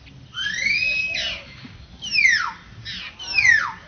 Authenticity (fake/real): real